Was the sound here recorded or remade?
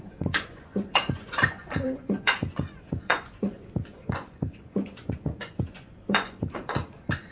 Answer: remade